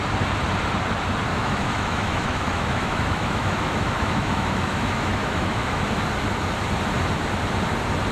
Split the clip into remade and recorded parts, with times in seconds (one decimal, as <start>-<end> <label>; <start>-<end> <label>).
0.0-1.3 recorded; 1.3-5.8 remade; 5.8-8.1 recorded